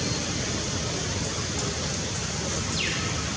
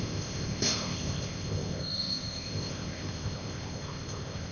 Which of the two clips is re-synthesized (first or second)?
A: second